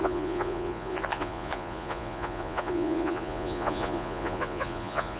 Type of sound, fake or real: fake